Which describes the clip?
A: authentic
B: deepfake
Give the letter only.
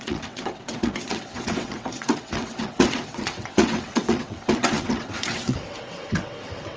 B